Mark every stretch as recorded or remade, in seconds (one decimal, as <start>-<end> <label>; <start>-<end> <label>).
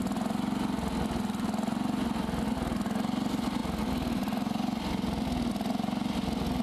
0.0-6.6 recorded